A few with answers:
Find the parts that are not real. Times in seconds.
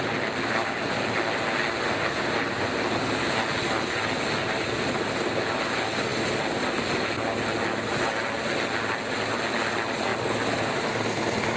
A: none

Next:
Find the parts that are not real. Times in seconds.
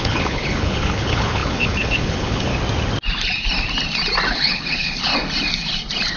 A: 0.0-2.5 (codec, HILCodec); 4.3-5.1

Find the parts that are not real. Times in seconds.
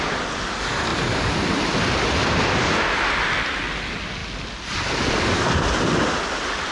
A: none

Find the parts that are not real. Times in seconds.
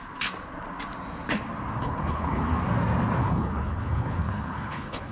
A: 1.8-2.5 (codec, HILCodec); 3.2-5.1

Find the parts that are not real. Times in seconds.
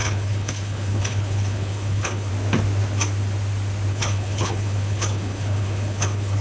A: 0.0-2.3 (codec, HILCodec); 3.9-6.4